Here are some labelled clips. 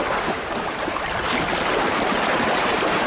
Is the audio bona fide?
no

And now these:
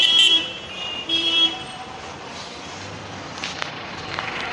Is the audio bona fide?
no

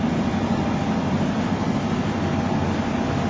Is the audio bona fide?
yes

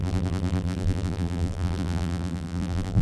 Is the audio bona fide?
no